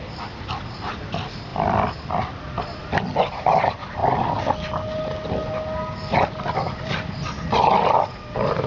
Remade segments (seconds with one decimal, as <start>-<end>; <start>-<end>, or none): 0.0-2.8; 3.6-4.0; 6.3-8.7